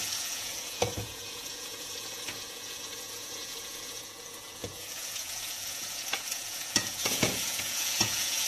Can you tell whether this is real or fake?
fake